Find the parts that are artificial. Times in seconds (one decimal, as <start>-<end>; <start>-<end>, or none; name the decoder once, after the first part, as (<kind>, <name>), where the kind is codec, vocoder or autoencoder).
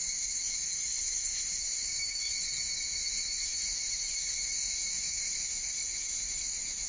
0.0-6.9 (autoencoder, DAC-VAE)